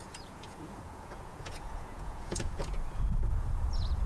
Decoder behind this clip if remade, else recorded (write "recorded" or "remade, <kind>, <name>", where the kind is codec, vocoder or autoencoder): remade, vocoder, Vocos